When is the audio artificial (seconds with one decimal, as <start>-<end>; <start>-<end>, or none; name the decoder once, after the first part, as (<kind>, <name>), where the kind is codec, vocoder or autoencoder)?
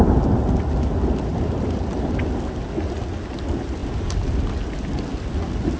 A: none